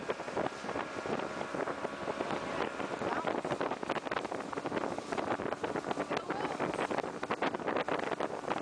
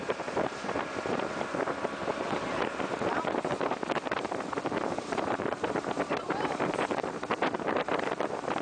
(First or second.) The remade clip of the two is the second